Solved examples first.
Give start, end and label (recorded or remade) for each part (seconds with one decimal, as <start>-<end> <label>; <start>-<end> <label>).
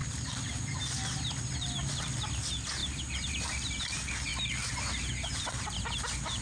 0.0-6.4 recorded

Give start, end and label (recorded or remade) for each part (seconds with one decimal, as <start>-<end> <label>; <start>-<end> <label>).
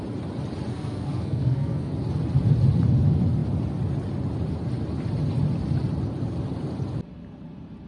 0.0-0.7 recorded; 0.7-1.9 remade; 1.9-7.9 recorded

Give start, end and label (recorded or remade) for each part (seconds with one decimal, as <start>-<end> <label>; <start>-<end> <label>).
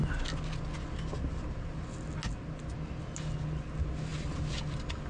0.0-5.1 recorded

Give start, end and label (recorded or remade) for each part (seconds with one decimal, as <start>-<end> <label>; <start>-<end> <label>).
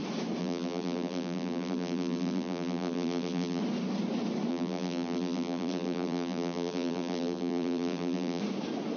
0.0-0.4 recorded; 0.4-3.6 remade; 3.6-4.5 recorded; 4.5-8.4 remade; 8.4-9.0 recorded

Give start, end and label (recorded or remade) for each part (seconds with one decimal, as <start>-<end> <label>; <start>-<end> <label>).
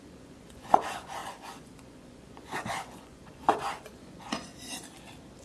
0.0-4.5 remade; 4.5-5.4 recorded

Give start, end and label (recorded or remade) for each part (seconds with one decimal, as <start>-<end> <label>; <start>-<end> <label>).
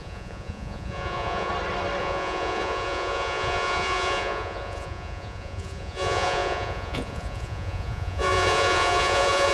0.0-1.5 remade; 1.5-2.0 recorded; 2.0-9.5 remade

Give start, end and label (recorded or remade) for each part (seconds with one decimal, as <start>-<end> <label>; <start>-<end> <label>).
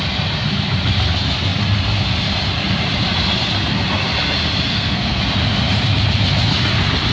0.0-4.7 recorded; 4.7-5.2 remade; 5.2-7.1 recorded